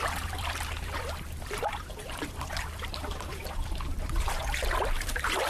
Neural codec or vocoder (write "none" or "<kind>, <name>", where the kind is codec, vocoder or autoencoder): vocoder, BigVGAN v2